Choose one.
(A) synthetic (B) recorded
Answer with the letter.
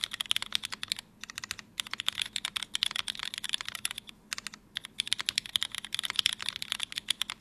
B